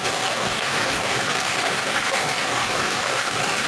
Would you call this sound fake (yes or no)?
yes